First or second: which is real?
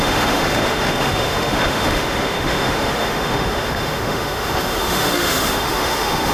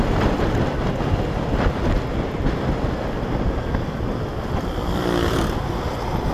second